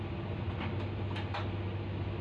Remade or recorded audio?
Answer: recorded